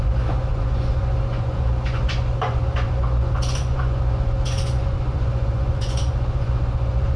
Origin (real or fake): fake